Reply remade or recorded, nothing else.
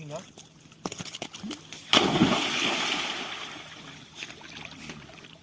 recorded